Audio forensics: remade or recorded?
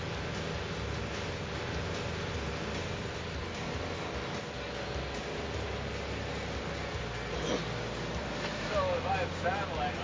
recorded